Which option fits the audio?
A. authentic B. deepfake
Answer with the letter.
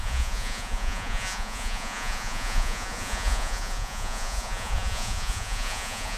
B